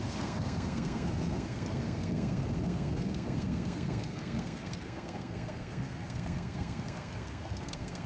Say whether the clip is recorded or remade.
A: remade